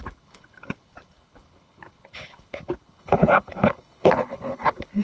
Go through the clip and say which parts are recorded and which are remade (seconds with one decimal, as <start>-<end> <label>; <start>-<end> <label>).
0.0-5.0 remade

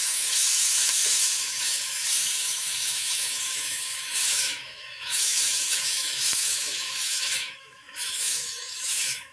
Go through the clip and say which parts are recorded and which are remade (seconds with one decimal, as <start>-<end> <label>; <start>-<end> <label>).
0.0-9.3 remade

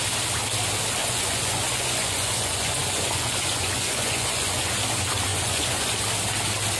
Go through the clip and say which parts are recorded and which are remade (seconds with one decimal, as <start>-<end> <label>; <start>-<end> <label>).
0.0-1.0 recorded; 1.0-4.7 remade; 4.7-5.3 recorded; 5.3-5.9 remade; 5.9-6.8 recorded

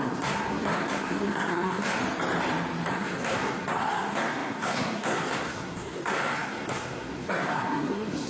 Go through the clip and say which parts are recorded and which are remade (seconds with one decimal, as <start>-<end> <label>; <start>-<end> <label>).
0.0-2.0 remade; 2.0-2.9 recorded; 2.9-8.3 remade

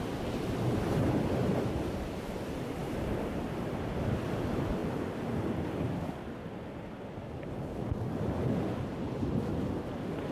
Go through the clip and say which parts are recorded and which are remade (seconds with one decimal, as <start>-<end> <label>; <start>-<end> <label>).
0.0-2.8 recorded; 2.8-3.5 remade; 3.5-10.3 recorded

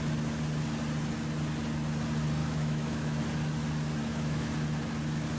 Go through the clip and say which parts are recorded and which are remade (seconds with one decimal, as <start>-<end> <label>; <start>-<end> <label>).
0.0-2.4 recorded; 2.4-3.2 remade; 3.2-4.0 recorded; 4.0-4.5 remade; 4.5-5.4 recorded